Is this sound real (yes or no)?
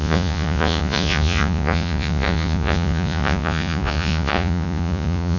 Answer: no